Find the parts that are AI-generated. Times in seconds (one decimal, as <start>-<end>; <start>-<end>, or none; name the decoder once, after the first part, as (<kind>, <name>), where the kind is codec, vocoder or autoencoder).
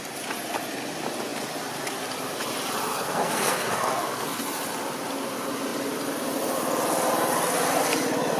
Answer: 2.9-4.4 (codec, SNAC)